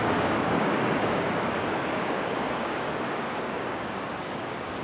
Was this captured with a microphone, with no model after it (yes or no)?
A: no